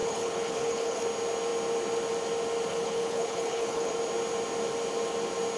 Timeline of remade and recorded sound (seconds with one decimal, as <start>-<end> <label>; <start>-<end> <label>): 0.0-1.0 remade; 1.0-2.7 recorded; 2.7-3.9 remade; 3.9-5.6 recorded